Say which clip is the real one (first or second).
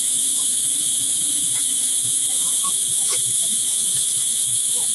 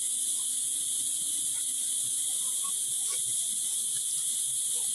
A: second